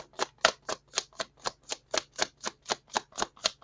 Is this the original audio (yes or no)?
yes